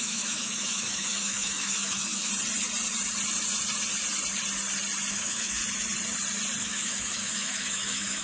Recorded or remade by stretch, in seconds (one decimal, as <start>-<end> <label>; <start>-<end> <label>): 0.0-2.3 remade; 2.3-5.1 recorded; 5.1-5.6 remade; 5.6-6.6 recorded; 6.6-8.2 remade